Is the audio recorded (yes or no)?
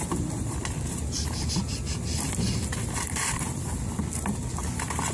no